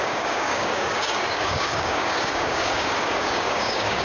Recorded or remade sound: remade